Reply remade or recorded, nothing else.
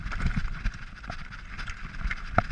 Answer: remade